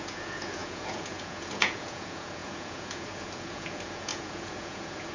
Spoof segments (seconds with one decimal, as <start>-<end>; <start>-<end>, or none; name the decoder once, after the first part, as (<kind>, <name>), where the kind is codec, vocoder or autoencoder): 0.0-5.1 (vocoder, Vocos)